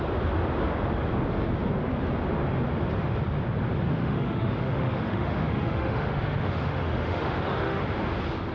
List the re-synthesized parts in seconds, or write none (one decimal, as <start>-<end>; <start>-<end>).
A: 4.0-7.8